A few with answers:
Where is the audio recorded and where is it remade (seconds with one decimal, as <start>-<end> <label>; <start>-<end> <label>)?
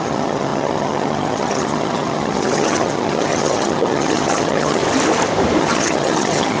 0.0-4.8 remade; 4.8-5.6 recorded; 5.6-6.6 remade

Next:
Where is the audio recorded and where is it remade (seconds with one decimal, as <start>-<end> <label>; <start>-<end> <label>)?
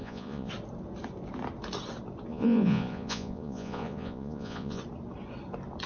0.0-0.5 remade; 0.5-2.3 recorded; 2.3-4.8 remade; 4.8-5.9 recorded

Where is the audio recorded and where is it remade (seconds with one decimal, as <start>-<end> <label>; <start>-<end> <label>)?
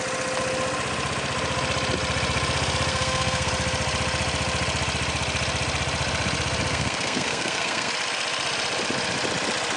0.0-2.9 recorded; 2.9-3.5 remade; 3.5-6.7 recorded; 6.7-7.9 remade; 7.9-9.8 recorded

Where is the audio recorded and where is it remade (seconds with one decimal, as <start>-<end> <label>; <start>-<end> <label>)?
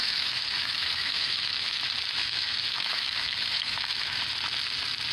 0.0-1.8 remade; 1.8-2.2 recorded; 2.2-4.2 remade; 4.2-5.1 recorded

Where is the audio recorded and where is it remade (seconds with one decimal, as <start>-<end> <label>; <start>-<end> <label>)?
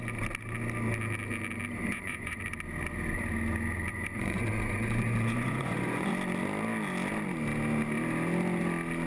0.0-1.8 recorded; 1.8-2.4 remade; 2.4-3.9 recorded; 3.9-6.1 remade; 6.1-9.1 recorded